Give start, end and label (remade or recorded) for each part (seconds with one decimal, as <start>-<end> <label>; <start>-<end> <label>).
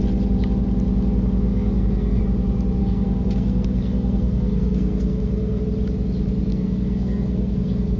0.0-1.5 recorded; 1.5-2.2 remade; 2.2-2.8 recorded; 2.8-5.6 remade; 5.6-6.5 recorded; 6.5-8.0 remade